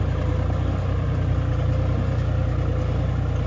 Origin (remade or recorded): recorded